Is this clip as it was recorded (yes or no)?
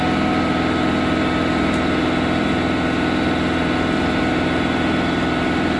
yes